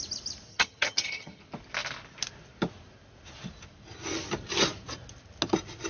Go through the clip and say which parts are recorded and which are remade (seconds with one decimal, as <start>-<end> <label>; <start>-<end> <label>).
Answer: 0.0-0.5 recorded; 0.5-1.4 remade; 1.4-5.9 recorded